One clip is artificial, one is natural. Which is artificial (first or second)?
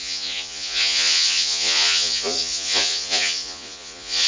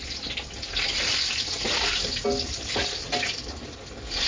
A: first